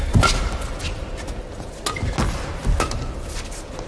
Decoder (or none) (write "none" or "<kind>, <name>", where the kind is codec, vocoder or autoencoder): none